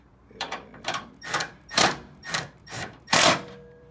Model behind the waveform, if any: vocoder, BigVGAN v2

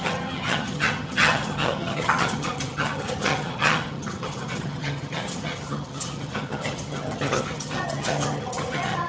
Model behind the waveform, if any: vocoder, HiFi-GAN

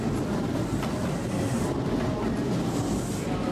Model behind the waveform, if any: none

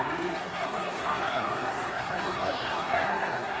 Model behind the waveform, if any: codec, SNAC